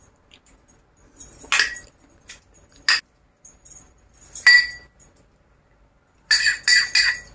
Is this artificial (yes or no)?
no